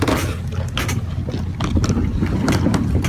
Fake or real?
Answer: real